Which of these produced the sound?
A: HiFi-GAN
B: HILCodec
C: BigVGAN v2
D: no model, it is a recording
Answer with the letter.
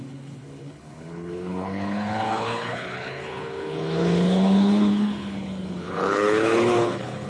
B